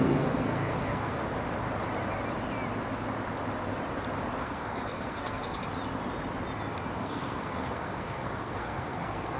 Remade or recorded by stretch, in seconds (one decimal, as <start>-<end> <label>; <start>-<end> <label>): 0.0-1.2 remade; 1.2-4.4 recorded; 4.4-5.6 remade; 5.6-7.0 recorded; 7.0-9.4 remade